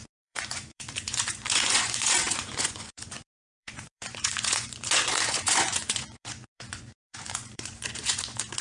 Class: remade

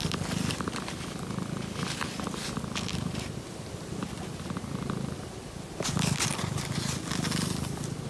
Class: recorded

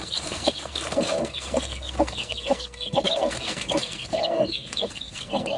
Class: remade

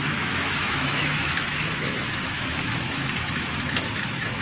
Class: remade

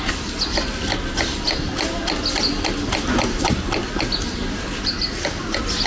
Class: recorded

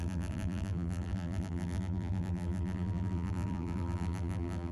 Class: remade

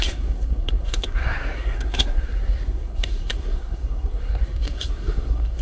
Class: remade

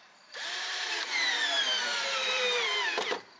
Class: remade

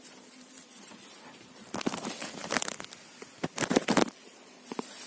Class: remade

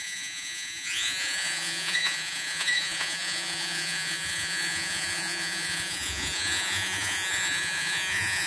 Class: remade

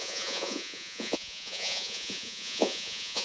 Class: remade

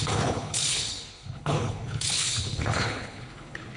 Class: remade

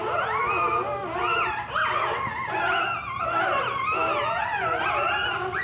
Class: recorded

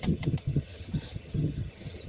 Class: remade